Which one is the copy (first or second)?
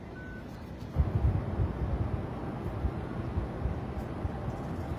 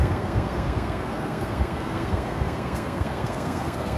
second